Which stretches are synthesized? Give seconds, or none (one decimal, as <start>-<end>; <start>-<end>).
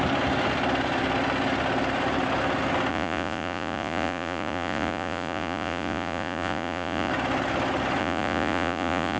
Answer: 2.9-7.1; 8.0-9.2